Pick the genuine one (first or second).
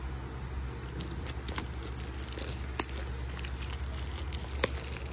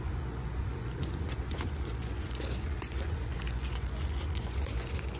first